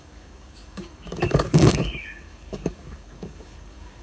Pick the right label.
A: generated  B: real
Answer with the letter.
A